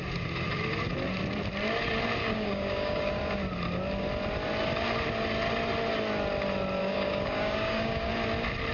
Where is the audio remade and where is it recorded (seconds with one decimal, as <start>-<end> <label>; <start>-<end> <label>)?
0.0-2.2 recorded; 2.2-3.2 remade; 3.2-6.8 recorded; 6.8-8.1 remade; 8.1-8.7 recorded